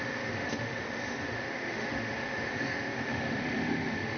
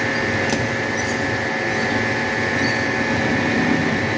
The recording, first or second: second